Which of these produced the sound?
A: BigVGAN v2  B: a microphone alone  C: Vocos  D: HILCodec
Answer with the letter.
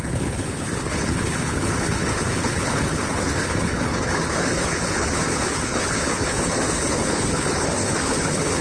D